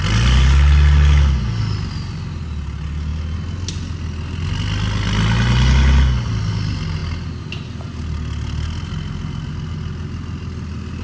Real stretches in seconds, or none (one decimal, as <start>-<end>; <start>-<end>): 0.0-11.0

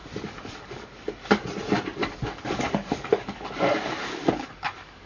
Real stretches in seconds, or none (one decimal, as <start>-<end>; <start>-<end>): 1.4-2.0

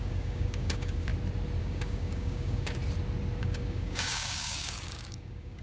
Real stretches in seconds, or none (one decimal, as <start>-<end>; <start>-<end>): 1.1-1.6; 2.8-3.4

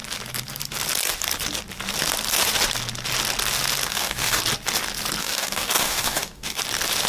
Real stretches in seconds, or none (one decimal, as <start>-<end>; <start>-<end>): 0.0-3.9; 4.4-5.2; 6.6-7.1

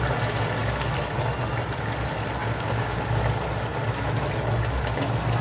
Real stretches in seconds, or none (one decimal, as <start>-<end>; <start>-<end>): 0.0-2.4; 3.0-5.4

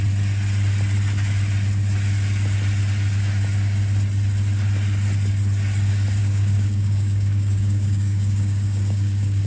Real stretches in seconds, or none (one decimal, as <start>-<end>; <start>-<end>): 0.0-6.2